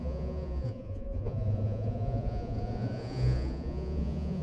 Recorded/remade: remade